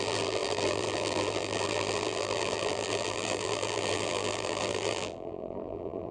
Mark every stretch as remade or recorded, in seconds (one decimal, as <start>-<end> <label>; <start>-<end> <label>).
0.0-6.1 remade